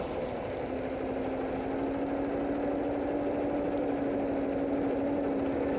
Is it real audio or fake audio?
real